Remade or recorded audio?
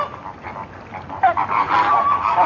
remade